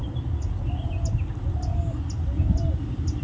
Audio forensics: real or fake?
real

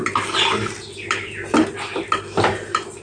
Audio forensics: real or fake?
real